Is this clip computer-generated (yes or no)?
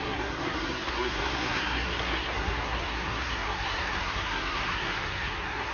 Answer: yes